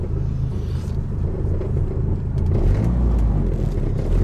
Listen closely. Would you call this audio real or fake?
real